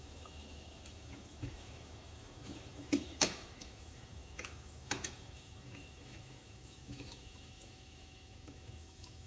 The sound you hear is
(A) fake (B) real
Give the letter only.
A